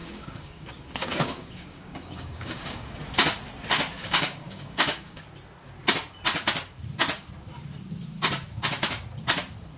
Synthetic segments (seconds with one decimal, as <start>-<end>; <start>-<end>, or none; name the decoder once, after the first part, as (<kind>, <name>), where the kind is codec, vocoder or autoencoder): 0.0-3.0 (codec, DAC); 4.0-5.2